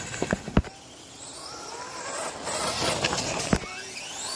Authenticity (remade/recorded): recorded